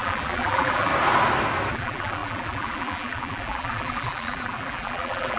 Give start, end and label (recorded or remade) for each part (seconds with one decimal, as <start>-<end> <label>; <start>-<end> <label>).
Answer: 0.0-0.9 remade; 0.9-1.7 recorded; 1.7-5.4 remade